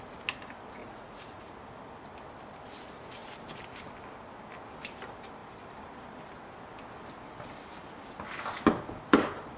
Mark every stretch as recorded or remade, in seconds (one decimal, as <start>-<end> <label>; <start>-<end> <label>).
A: 0.0-0.8 recorded; 0.8-1.5 remade; 1.5-9.6 recorded